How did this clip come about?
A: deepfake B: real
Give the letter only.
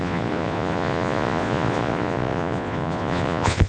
A